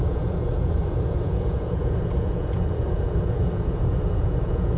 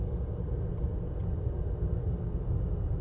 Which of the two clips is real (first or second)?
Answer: second